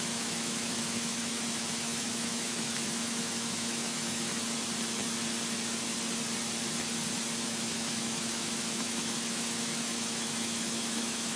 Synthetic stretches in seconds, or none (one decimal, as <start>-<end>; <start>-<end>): 0.0-4.3; 7.4-11.4